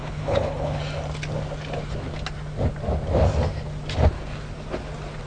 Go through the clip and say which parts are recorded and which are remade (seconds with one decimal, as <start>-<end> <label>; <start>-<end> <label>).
0.0-0.8 remade; 0.8-5.3 recorded